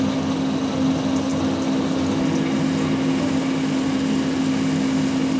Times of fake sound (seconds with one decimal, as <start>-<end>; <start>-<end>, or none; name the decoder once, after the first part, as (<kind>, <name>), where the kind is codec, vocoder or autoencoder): none